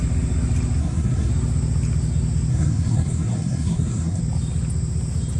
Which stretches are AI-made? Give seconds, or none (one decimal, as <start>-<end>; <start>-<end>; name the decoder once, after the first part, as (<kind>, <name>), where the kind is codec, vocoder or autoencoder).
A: 0.8-1.3 (codec, SNAC); 2.5-4.2